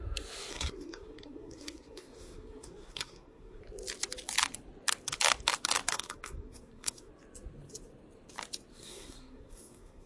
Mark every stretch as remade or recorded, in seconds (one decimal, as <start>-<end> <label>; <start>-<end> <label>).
0.0-0.5 recorded; 0.5-3.6 remade; 3.6-5.9 recorded; 5.9-7.1 remade; 7.1-8.7 recorded; 8.7-10.1 remade